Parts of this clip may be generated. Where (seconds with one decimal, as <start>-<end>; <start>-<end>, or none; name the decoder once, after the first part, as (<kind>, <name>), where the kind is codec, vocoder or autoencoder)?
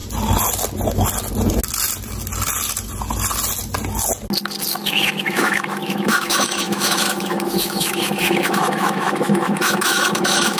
4.8-10.6 (autoencoder, DAC-VAE)